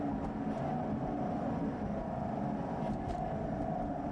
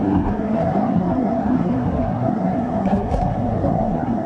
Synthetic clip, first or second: second